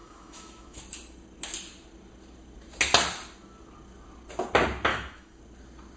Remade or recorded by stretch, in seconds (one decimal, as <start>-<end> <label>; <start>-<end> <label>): 0.0-0.8 remade; 0.8-4.9 recorded; 4.9-5.4 remade; 5.4-6.0 recorded